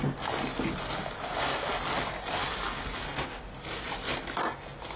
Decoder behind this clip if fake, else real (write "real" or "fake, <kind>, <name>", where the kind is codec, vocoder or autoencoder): real